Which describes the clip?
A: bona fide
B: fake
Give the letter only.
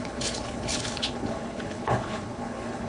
B